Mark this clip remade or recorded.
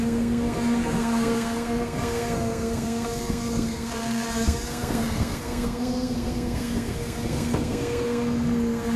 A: remade